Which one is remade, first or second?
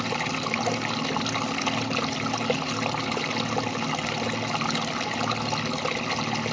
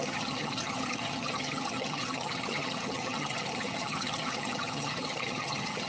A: second